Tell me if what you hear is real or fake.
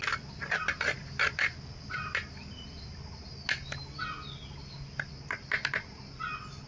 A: real